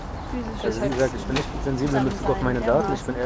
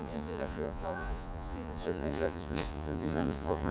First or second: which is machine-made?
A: second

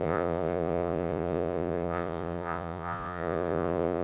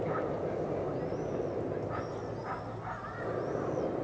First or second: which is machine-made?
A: first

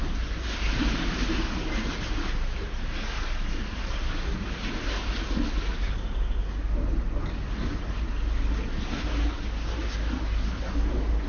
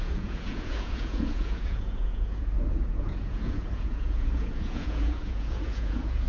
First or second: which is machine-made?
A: second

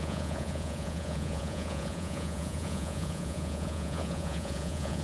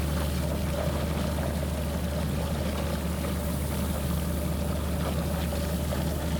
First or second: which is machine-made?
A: first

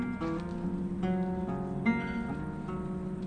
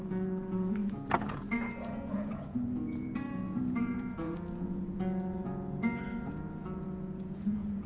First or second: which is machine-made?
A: second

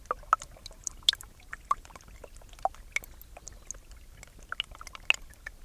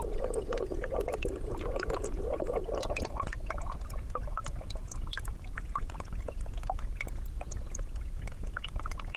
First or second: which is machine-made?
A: second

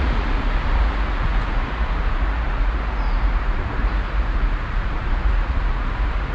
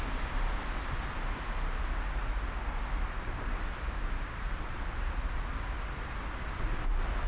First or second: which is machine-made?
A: first